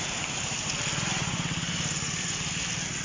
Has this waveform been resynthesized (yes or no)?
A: no